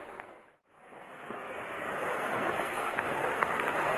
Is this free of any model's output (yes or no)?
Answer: no